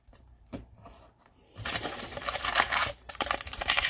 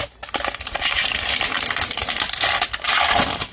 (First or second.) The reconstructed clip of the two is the first